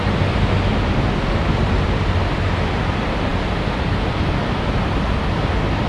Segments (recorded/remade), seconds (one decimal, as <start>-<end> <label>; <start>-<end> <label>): 0.0-5.9 recorded